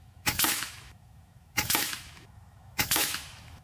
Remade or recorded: remade